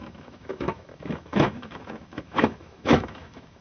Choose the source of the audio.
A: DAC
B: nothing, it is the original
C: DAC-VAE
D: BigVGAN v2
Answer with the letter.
C